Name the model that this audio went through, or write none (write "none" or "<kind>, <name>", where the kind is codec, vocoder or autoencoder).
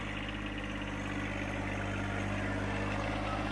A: none